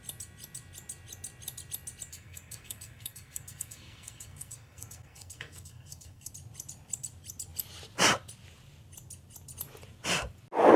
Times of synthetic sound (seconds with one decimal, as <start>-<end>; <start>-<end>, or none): 2.1-6.3